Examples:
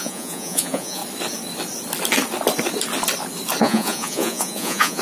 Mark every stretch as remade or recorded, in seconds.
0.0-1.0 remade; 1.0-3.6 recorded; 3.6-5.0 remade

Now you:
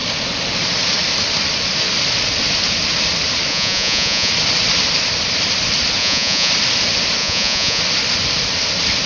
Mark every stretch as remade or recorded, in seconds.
0.0-3.5 recorded; 3.5-4.3 remade; 4.3-6.0 recorded; 6.0-6.5 remade; 6.5-7.2 recorded; 7.2-7.8 remade; 7.8-9.1 recorded

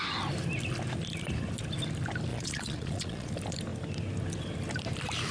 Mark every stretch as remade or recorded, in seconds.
0.0-2.3 recorded; 2.3-3.3 remade; 3.3-5.3 recorded